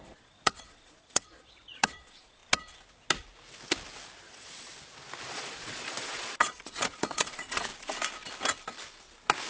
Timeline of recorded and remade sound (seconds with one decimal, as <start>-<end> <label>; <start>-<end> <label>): 0.0-2.4 remade; 2.4-4.2 recorded; 4.2-4.7 remade; 4.7-5.3 recorded; 5.3-7.7 remade; 7.7-9.5 recorded